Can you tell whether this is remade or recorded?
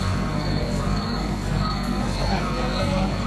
remade